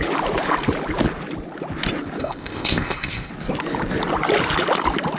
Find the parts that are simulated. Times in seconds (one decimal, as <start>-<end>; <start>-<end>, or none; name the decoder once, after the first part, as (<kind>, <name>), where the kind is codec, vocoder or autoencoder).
2.2-3.3 (codec, ZipCodec)